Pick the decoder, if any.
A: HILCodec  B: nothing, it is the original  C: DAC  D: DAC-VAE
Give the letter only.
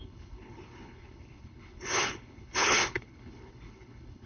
A